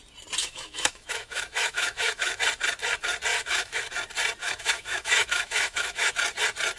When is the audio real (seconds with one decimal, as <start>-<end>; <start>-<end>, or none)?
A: 0.0-0.4; 2.4-3.3; 3.9-4.4; 6.1-6.8